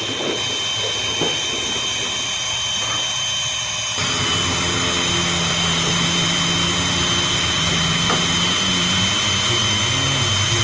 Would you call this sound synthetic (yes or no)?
no